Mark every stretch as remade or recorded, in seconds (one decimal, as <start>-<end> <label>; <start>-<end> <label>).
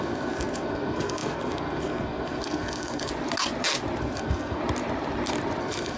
0.0-3.1 remade; 3.1-4.0 recorded; 4.0-4.6 remade; 4.6-5.6 recorded; 5.6-6.0 remade